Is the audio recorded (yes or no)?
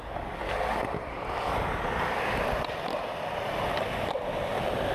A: yes